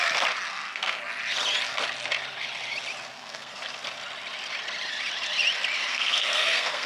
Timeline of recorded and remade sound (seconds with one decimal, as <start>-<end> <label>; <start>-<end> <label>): 0.0-0.5 recorded; 0.5-1.0 remade; 1.0-3.1 recorded; 3.1-3.7 remade; 3.7-5.9 recorded; 5.9-6.9 remade